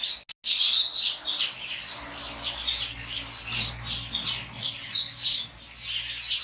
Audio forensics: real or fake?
real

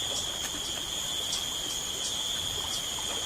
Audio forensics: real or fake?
real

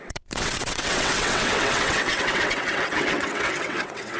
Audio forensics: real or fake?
fake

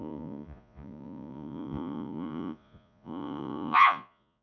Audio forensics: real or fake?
fake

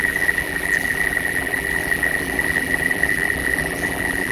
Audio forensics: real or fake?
fake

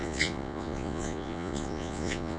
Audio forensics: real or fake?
fake